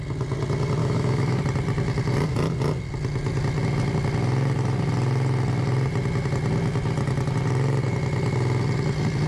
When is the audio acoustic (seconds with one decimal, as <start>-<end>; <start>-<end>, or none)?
0.0-0.8; 1.4-9.3